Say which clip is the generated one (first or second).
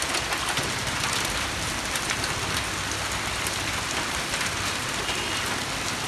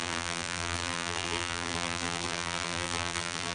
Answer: second